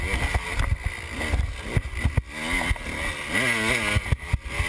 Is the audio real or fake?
real